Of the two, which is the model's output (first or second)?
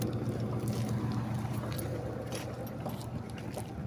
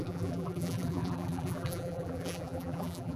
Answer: second